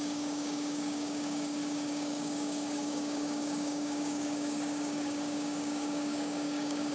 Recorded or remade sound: remade